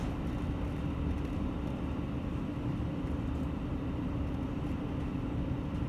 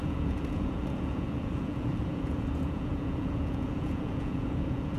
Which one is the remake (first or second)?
second